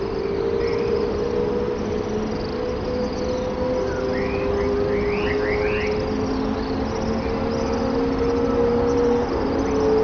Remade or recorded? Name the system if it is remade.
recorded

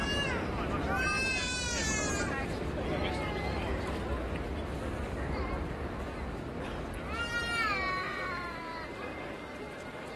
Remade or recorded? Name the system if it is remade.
recorded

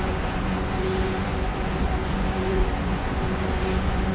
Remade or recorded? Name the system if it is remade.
remade, vocoder, Vocos